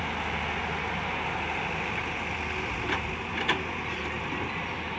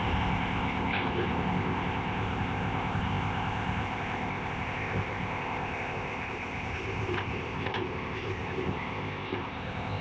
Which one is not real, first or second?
second